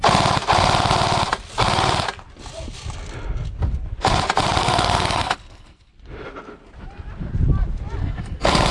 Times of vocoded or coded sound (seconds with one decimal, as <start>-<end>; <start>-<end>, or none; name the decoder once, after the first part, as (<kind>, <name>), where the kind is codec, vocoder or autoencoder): 4.6-5.9 (codec, SNAC); 8.0-8.7